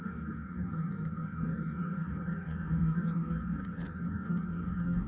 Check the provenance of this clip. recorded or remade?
remade